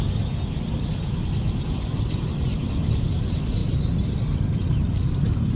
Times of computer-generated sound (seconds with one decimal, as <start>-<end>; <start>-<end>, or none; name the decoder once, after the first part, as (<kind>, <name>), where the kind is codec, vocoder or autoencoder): 3.6-5.6 (vocoder, BigVGAN v2)